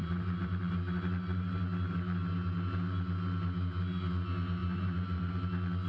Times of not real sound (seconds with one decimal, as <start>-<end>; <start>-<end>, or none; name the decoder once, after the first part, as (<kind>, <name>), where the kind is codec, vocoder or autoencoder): 0.0-0.7 (vocoder, BigVGAN v2); 4.6-5.3